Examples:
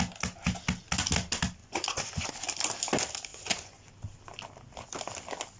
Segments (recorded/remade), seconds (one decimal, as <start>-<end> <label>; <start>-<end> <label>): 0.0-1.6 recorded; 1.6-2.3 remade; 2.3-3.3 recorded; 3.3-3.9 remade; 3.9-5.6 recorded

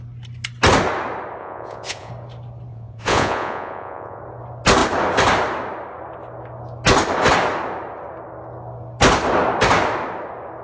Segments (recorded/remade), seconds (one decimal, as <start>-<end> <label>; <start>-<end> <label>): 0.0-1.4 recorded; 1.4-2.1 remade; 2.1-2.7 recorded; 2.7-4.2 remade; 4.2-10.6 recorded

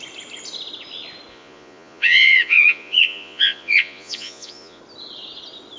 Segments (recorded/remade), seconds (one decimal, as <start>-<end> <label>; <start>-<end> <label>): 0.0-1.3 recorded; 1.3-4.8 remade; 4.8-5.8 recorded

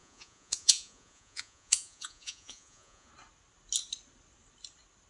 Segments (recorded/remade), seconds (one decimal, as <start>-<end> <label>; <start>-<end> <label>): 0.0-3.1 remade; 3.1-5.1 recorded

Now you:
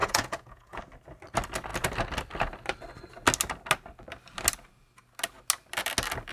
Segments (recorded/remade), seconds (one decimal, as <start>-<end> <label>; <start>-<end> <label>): 0.0-0.8 remade; 0.8-6.3 recorded

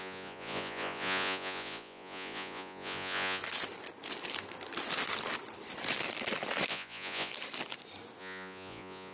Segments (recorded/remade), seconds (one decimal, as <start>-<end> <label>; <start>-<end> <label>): 0.0-3.4 remade; 3.4-6.7 recorded; 6.7-7.3 remade; 7.3-8.2 recorded; 8.2-9.1 remade